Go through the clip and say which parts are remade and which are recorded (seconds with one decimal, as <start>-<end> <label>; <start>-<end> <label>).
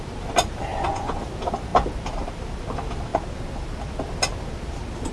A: 0.0-0.7 recorded; 0.7-1.2 remade; 1.2-5.1 recorded